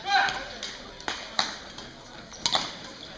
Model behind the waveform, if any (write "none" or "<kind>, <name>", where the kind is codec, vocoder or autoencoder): none